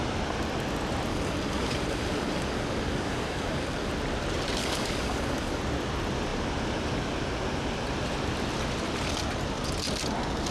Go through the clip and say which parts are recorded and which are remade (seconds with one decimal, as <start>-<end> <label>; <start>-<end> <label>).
0.0-1.1 recorded; 1.1-3.9 remade; 3.9-4.6 recorded; 4.6-5.6 remade; 5.6-10.5 recorded